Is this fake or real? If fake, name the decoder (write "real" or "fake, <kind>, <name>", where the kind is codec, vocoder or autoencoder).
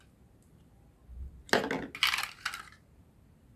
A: real